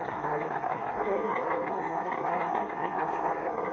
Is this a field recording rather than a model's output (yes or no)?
no